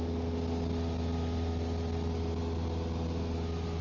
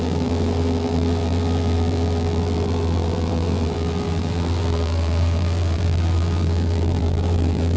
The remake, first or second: second